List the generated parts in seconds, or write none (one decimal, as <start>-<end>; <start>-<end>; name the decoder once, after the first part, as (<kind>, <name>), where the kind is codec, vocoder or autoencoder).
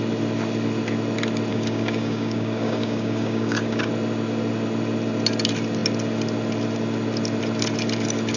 1.5-3.9 (codec, DAC)